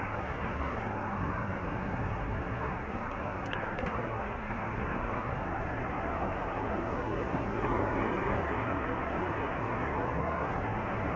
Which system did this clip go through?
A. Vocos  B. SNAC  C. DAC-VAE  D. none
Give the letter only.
B